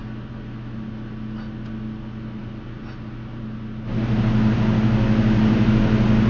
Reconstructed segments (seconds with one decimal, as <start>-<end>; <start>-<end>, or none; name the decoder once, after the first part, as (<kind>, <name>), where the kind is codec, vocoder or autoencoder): none